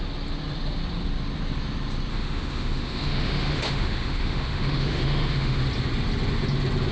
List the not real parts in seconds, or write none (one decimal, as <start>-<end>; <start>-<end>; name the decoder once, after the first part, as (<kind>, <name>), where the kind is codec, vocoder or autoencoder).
2.1-5.6 (autoencoder, DAC-VAE)